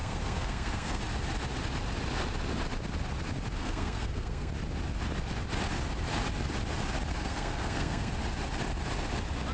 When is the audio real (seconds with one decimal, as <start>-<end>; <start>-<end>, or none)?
1.0-3.6; 4.5-7.1; 8.1-9.5